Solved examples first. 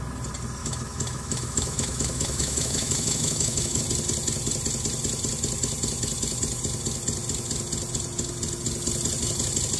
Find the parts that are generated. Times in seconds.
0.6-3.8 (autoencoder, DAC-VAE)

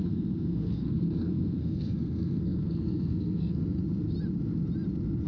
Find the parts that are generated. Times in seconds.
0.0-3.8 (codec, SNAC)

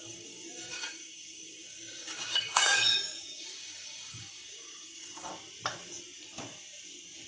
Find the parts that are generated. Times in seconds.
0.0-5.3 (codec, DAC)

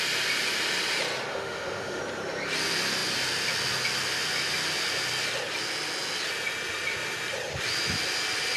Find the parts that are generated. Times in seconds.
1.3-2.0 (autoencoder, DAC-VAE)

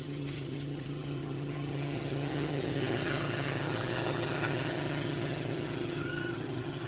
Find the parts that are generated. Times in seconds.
0.0-6.9 (vocoder, HiFi-GAN)

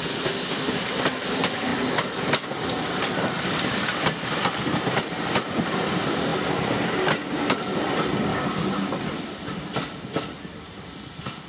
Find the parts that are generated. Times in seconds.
8.3-8.9 (codec, DAC)

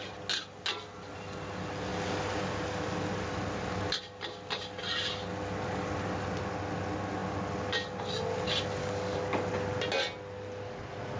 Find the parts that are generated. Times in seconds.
8.8-9.5 (codec, DAC)